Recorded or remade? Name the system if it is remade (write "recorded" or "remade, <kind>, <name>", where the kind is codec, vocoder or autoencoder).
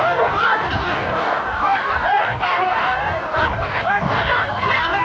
remade, codec, DAC